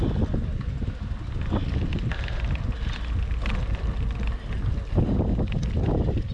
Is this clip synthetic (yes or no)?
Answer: no